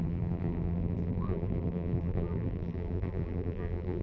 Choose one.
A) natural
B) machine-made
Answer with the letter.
B